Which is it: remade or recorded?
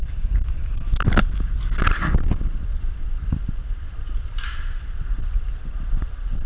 recorded